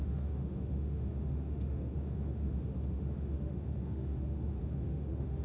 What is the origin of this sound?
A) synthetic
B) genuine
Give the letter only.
A